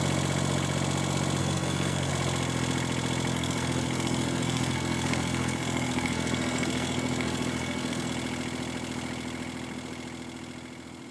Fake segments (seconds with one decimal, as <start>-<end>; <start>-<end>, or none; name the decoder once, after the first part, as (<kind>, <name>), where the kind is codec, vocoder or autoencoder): 1.4-2.1 (codec, SNAC); 3.3-8.1